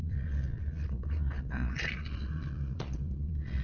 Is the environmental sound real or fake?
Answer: fake